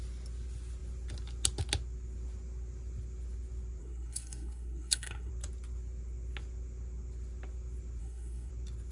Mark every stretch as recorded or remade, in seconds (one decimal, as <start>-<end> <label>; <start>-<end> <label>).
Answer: 0.0-3.8 recorded; 3.8-5.3 remade; 5.3-8.0 recorded; 8.0-8.5 remade; 8.5-8.9 recorded